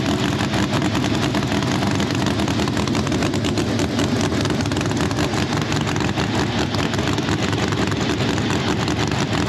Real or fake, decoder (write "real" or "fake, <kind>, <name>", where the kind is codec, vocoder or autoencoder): real